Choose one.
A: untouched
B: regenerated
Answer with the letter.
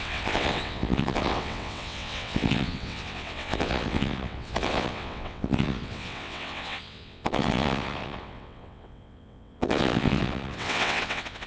B